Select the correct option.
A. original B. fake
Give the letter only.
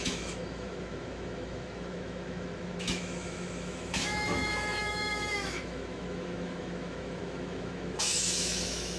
B